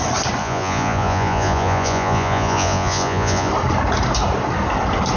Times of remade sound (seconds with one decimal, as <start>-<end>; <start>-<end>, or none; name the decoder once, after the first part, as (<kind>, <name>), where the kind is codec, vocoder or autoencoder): 0.4-3.5 (vocoder, Vocos)